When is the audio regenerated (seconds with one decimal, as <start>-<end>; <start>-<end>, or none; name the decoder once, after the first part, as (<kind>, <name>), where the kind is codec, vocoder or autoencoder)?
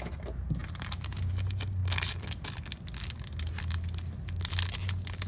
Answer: 0.6-1.3 (vocoder, BigVGAN v2)